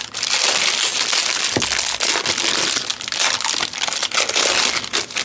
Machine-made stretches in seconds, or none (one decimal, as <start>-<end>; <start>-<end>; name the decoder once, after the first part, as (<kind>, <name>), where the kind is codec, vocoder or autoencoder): none